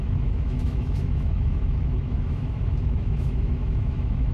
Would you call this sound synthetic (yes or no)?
yes